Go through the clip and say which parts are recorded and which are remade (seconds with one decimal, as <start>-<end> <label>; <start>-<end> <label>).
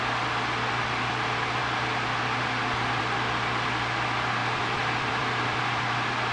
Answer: 0.0-1.6 recorded; 1.6-3.0 remade; 3.0-4.4 recorded; 4.4-5.6 remade; 5.6-6.3 recorded